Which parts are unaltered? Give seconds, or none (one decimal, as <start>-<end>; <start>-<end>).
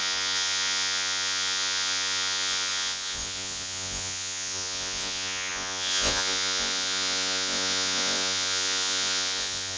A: none